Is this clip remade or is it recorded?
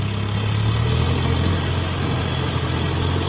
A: recorded